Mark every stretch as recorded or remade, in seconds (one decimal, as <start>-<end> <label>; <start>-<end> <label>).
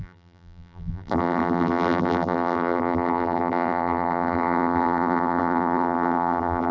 0.0-6.7 remade